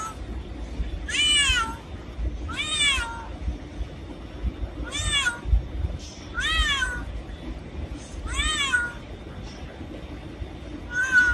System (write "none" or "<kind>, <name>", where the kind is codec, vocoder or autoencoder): none